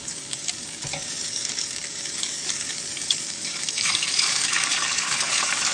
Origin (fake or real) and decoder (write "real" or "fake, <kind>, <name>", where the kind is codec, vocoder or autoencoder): fake, codec, DAC